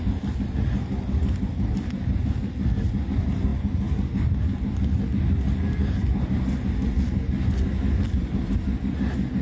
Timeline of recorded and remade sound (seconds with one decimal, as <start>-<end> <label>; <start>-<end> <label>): 0.0-9.4 recorded